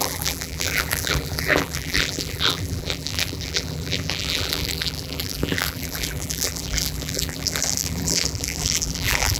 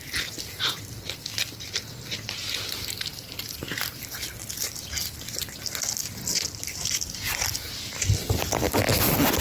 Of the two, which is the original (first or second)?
second